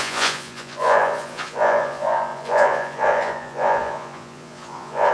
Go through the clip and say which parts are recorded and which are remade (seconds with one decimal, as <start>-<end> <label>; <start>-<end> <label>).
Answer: 0.0-5.1 remade